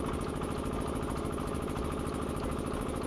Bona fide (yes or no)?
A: yes